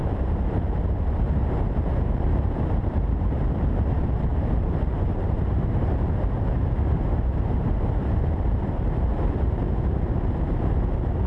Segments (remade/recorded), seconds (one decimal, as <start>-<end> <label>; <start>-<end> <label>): 0.0-4.3 remade; 4.3-5.0 recorded; 5.0-11.3 remade